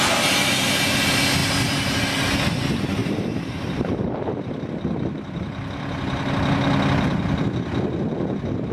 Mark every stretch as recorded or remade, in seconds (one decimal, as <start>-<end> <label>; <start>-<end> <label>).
0.0-3.0 recorded; 3.0-6.3 remade; 6.3-8.7 recorded